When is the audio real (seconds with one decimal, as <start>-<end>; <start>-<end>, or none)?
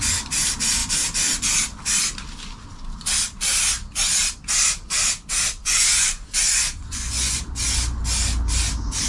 0.0-5.6; 7.4-9.1